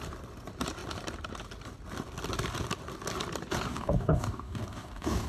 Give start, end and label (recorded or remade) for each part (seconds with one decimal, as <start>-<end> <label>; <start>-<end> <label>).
0.0-3.7 recorded; 3.7-5.3 remade